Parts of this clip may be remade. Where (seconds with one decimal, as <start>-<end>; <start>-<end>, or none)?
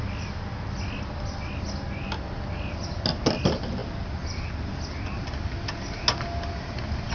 none